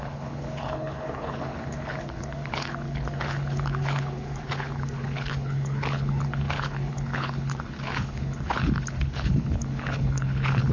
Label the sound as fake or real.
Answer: fake